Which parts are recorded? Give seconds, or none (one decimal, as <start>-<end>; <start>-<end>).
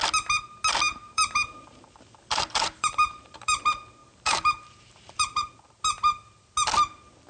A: 0.0-0.9; 3.6-4.0; 5.5-7.3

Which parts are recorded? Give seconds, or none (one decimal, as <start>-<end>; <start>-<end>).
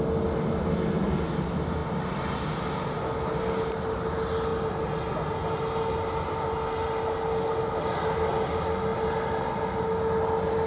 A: 0.0-10.7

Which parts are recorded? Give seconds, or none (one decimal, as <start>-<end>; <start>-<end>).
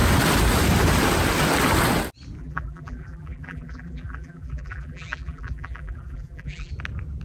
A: 0.0-2.4; 6.7-7.2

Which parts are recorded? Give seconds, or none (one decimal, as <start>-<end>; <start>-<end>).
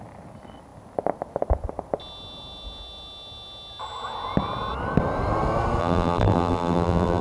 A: 0.0-5.8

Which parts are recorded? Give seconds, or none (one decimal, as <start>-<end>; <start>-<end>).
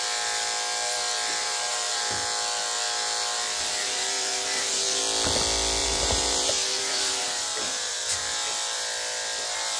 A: 0.0-1.4; 2.0-3.7; 5.0-5.8; 8.2-9.8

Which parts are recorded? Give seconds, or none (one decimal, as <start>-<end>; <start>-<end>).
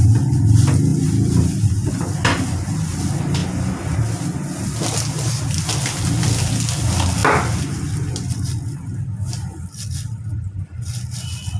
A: 0.0-0.9; 2.4-7.2; 10.6-11.6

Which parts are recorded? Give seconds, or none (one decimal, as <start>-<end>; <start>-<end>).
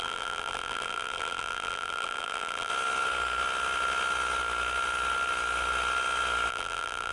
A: 2.7-6.5